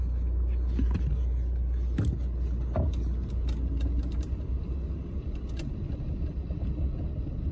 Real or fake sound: real